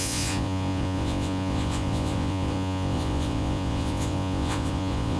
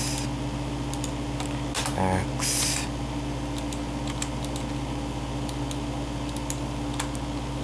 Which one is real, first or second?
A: second